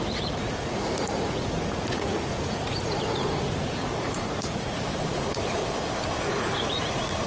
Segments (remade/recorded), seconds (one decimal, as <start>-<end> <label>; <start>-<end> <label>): 0.0-5.6 remade; 5.6-6.2 recorded; 6.2-7.3 remade

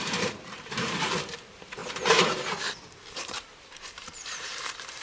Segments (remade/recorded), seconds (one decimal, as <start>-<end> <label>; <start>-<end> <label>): 0.0-1.8 remade; 1.8-3.1 recorded; 3.1-5.0 remade

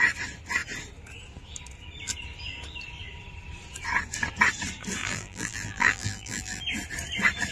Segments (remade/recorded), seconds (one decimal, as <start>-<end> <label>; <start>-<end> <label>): 0.0-5.0 recorded; 5.0-6.6 remade; 6.6-7.5 recorded

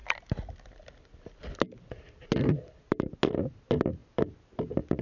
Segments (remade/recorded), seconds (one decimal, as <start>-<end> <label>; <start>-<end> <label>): 0.0-5.0 recorded

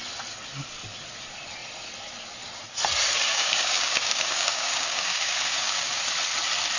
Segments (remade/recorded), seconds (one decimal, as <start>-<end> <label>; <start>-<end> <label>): 0.0-3.3 recorded; 3.3-6.0 remade; 6.0-6.8 recorded

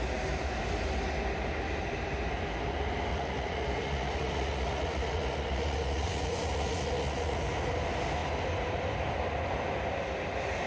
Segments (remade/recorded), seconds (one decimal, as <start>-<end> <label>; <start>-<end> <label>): 0.0-3.1 recorded; 3.1-7.4 remade; 7.4-10.7 recorded

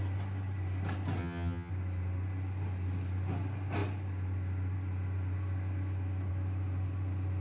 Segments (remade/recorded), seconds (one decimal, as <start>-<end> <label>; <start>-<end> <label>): 0.0-1.2 recorded; 1.2-1.7 remade; 1.7-7.4 recorded

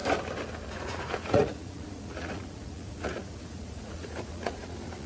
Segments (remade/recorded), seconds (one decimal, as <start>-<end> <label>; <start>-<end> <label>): 0.0-0.7 recorded; 0.7-5.1 remade